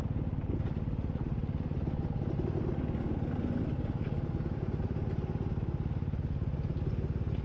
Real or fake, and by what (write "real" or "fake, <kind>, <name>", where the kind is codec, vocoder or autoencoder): real